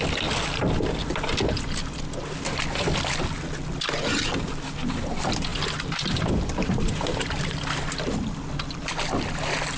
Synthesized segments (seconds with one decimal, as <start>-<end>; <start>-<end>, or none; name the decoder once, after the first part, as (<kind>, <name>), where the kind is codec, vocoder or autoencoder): 5.5-8.9 (vocoder, BigVGAN v2)